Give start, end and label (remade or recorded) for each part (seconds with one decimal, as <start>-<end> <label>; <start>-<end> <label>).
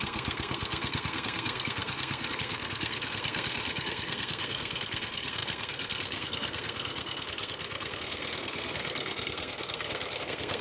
0.0-10.6 remade